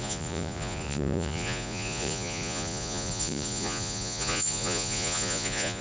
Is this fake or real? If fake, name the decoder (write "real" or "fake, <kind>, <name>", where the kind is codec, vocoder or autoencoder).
fake, vocoder, Vocos